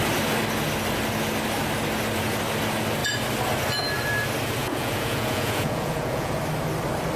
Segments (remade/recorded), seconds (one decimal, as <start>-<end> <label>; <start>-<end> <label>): 0.0-4.6 recorded; 4.6-6.4 remade; 6.4-7.2 recorded